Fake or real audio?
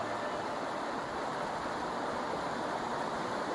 real